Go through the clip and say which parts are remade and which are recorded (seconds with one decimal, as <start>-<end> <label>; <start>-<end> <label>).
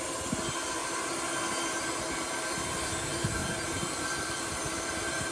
0.0-0.8 remade; 0.8-2.4 recorded; 2.4-5.3 remade